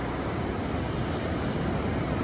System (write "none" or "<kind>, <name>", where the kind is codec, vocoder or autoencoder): none